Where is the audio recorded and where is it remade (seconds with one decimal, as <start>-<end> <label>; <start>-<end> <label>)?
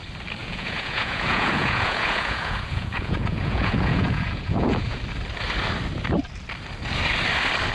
0.0-0.4 recorded; 0.4-5.0 remade; 5.0-7.7 recorded